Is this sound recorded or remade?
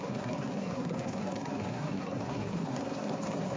remade